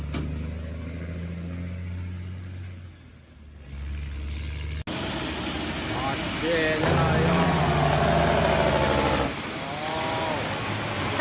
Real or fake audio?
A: real